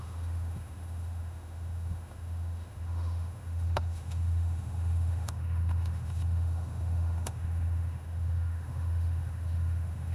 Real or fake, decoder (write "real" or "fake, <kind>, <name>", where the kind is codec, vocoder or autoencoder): fake, autoencoder, DAC-VAE